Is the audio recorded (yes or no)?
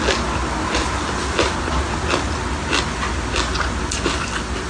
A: yes